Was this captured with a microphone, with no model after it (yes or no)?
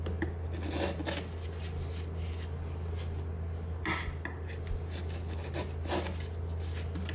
yes